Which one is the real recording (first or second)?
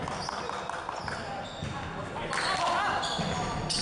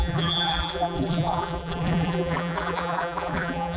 first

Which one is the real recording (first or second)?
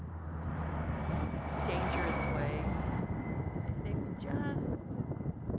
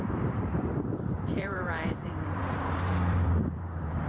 first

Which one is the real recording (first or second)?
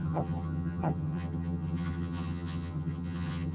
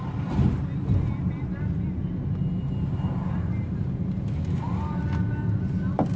second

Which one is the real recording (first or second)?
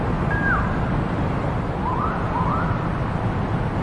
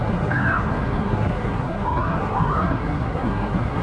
first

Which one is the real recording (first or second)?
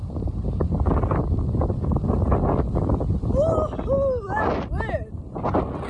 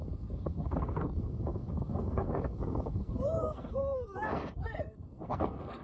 first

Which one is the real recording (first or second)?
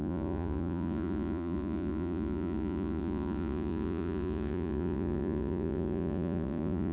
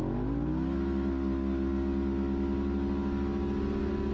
second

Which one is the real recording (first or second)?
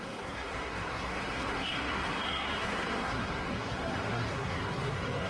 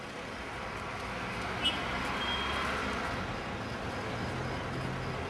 second